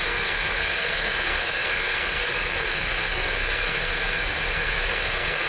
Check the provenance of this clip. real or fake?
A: fake